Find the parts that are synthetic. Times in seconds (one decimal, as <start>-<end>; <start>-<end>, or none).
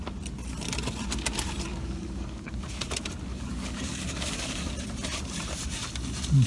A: 1.7-2.5; 3.3-4.7